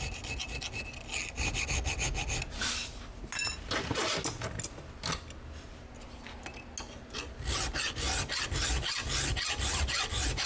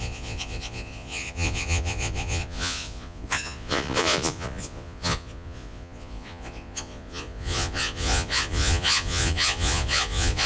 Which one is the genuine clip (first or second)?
first